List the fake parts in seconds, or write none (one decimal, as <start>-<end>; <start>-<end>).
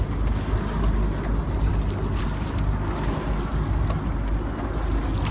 none